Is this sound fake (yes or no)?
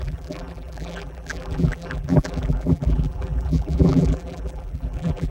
yes